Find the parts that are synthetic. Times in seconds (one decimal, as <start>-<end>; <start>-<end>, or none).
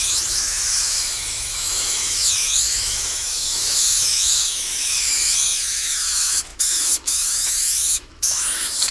0.0-8.9